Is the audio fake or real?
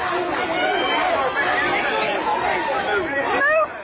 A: real